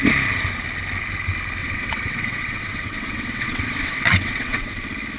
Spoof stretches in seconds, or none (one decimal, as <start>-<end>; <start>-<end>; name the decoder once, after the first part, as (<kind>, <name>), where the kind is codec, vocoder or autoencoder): 1.6-4.7 (vocoder, WaveNeXt)